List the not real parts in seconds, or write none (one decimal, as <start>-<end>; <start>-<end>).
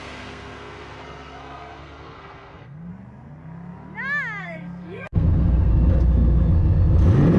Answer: 0.0-2.9; 4.4-5.7